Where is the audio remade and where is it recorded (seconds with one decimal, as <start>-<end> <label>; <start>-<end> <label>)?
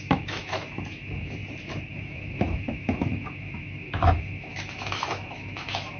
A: 0.0-1.4 remade; 1.4-1.9 recorded; 1.9-6.0 remade